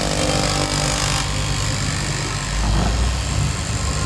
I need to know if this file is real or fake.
real